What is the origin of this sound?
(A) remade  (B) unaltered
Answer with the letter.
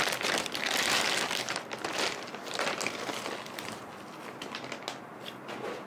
B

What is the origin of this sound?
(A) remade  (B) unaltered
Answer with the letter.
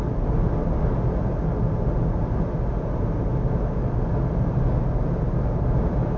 B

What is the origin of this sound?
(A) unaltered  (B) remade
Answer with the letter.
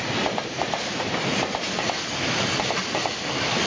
A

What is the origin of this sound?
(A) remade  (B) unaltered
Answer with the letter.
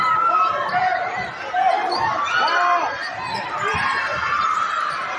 B